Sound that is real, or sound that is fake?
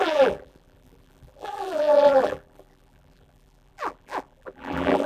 fake